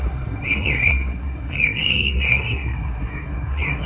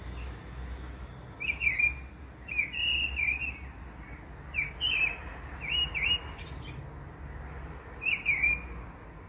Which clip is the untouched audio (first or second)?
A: second